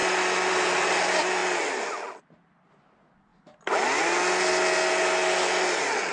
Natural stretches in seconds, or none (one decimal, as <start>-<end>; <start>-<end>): 0.0-6.1